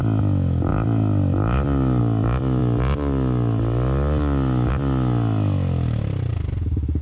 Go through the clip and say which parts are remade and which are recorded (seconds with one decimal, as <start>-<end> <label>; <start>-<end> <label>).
0.0-7.0 recorded